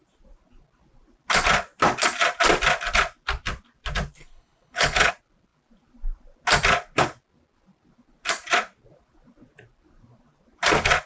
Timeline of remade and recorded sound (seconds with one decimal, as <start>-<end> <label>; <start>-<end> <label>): 0.0-4.2 recorded; 4.2-5.1 remade; 5.1-11.1 recorded